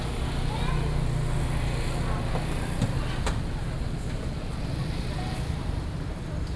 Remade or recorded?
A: recorded